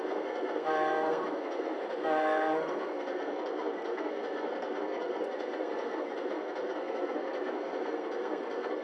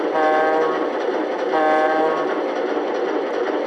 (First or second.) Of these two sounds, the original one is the second